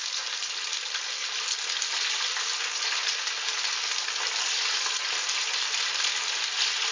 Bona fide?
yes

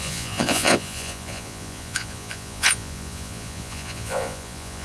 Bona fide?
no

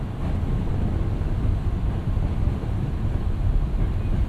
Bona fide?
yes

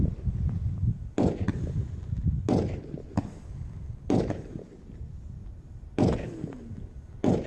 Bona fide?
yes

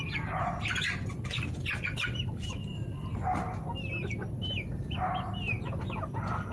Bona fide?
yes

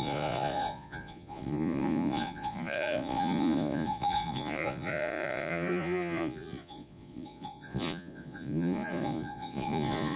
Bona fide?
no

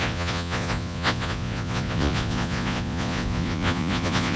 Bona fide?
no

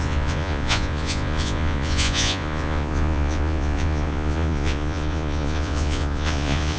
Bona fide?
no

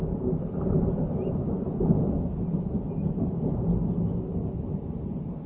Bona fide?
yes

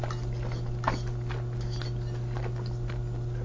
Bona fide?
yes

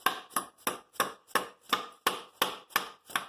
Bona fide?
yes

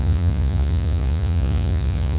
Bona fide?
no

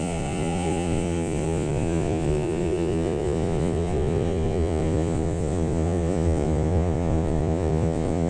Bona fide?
no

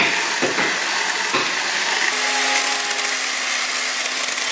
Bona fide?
yes